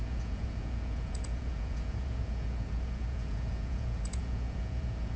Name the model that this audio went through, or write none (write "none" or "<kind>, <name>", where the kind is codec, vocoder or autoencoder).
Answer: vocoder, Vocos